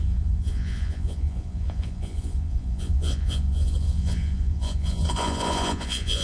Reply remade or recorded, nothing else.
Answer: remade